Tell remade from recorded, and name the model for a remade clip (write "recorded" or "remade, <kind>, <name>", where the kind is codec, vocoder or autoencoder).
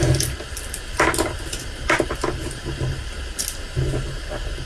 recorded